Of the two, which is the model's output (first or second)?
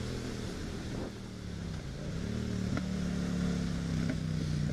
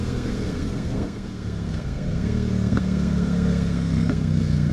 second